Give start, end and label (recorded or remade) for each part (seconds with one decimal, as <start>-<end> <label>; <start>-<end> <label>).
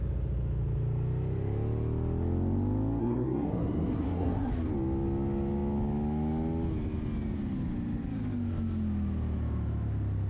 0.0-3.0 recorded; 3.0-4.5 remade; 4.5-10.3 recorded